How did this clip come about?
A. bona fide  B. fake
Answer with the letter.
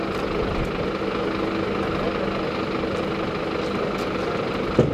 A